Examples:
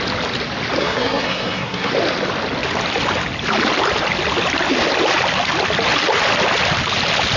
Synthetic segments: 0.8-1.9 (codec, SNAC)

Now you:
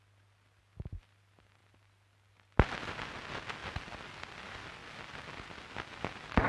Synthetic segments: none

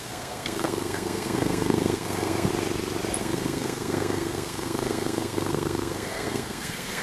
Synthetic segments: 0.0-2.5 (codec, SNAC); 3.2-7.0

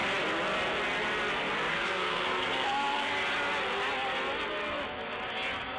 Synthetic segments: 1.7-3.1 (codec, SNAC)

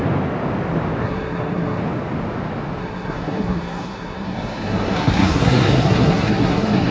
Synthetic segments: 1.0-1.8 (codec, SNAC); 2.8-6.9